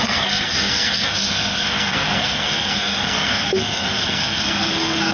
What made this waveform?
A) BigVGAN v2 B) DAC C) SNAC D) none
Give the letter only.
C